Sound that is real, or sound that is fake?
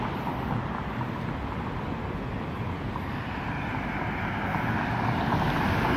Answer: real